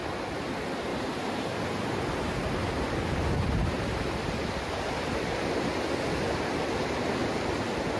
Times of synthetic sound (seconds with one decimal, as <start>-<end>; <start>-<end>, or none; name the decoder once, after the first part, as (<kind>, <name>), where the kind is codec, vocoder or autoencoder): 0.9-5.5 (vocoder, BigVGAN v2)